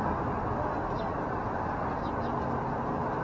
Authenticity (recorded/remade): recorded